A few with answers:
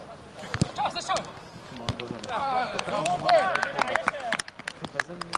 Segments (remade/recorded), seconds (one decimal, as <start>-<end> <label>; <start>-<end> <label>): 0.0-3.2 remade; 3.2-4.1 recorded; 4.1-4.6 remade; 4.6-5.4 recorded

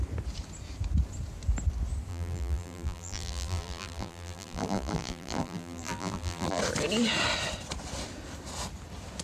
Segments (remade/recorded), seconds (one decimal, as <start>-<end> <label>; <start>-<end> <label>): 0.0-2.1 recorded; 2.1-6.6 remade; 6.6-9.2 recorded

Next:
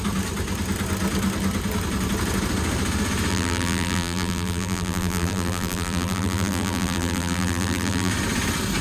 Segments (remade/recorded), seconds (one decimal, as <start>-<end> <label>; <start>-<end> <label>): 0.0-3.3 recorded; 3.3-8.1 remade; 8.1-8.8 recorded

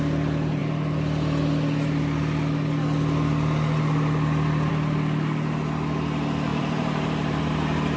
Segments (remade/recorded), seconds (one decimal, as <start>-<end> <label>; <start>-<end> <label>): 0.0-6.5 recorded; 6.5-7.4 remade; 7.4-8.0 recorded

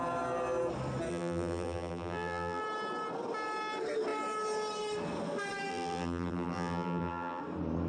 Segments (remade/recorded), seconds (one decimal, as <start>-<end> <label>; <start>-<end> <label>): 0.0-1.1 recorded; 1.1-2.6 remade; 2.6-5.7 recorded; 5.7-7.4 remade; 7.4-7.9 recorded

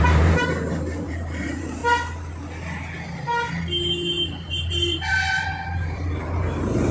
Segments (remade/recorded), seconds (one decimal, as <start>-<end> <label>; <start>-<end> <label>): 0.0-1.8 remade; 1.8-5.1 recorded; 5.1-6.9 remade

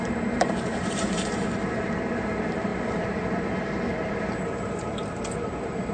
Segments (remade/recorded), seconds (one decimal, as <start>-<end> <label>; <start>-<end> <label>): 0.0-5.9 remade

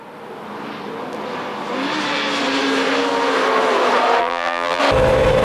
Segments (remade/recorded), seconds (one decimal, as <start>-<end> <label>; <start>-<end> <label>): 0.0-4.2 recorded; 4.2-4.8 remade; 4.8-5.4 recorded